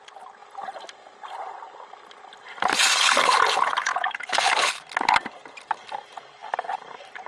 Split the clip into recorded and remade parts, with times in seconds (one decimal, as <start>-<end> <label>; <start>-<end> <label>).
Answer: 0.0-7.3 recorded